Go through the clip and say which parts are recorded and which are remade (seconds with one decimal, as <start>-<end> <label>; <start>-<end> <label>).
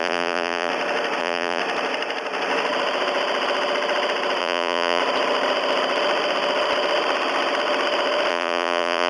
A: 0.0-0.7 remade; 0.7-1.2 recorded; 1.2-1.6 remade; 1.6-4.4 recorded; 4.4-5.0 remade; 5.0-8.3 recorded; 8.3-9.1 remade